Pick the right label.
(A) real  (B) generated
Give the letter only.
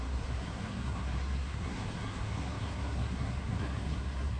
B